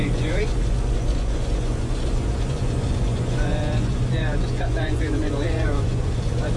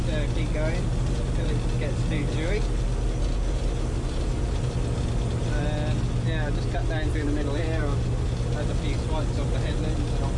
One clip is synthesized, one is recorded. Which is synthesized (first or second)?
first